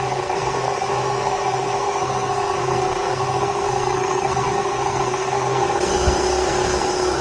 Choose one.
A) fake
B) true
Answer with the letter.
A